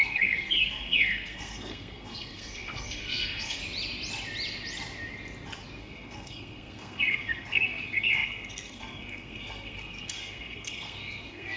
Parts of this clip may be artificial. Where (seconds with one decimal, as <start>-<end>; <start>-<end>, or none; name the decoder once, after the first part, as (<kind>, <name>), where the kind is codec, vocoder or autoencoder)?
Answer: 0.0-3.6 (codec, SNAC); 5.8-11.6